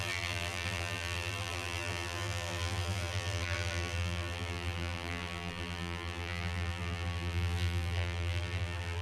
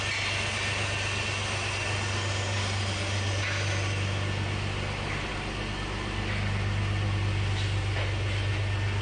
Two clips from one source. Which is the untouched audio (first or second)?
second